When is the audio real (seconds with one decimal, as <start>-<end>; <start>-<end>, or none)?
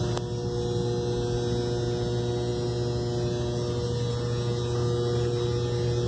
0.0-6.1